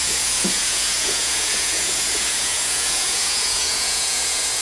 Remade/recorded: remade